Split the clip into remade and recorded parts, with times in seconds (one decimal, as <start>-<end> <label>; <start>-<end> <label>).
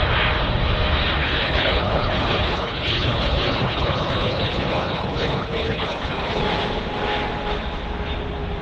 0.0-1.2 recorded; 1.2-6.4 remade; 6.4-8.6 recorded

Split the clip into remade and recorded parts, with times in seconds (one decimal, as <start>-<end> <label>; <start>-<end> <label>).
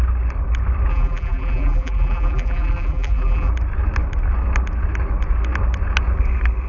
0.0-0.9 recorded; 0.9-3.5 remade; 3.5-6.7 recorded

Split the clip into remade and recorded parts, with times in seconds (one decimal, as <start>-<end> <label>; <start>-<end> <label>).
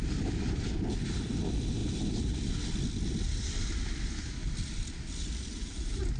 0.0-6.2 recorded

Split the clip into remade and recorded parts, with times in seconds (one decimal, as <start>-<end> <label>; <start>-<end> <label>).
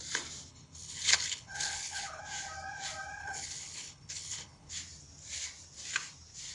0.0-0.5 recorded; 0.5-2.2 remade; 2.2-3.2 recorded; 3.2-4.7 remade; 4.7-6.5 recorded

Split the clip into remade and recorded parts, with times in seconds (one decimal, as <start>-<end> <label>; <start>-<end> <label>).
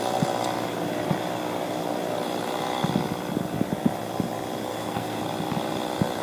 0.0-4.7 recorded; 4.7-5.2 remade; 5.2-6.2 recorded